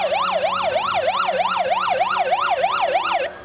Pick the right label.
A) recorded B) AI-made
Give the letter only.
A